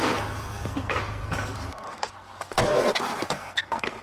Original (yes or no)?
no